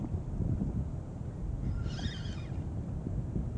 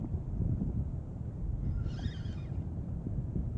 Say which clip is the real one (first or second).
first